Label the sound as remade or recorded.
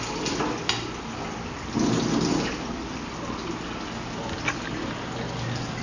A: recorded